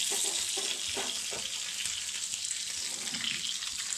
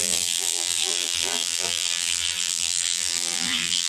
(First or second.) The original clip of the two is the first